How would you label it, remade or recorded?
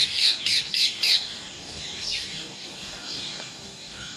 remade